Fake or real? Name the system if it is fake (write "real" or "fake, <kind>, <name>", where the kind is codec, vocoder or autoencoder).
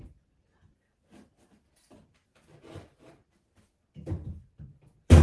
fake, vocoder, BigVGAN v2